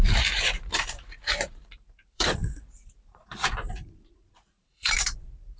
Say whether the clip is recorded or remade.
remade